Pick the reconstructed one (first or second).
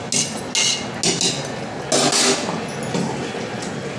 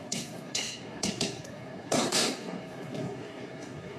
second